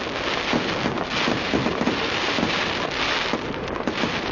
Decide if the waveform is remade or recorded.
recorded